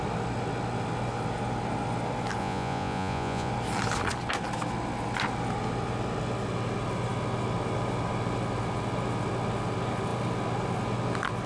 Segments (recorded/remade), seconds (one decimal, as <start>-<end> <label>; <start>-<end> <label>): 0.0-2.4 recorded; 2.4-3.5 remade; 3.5-11.5 recorded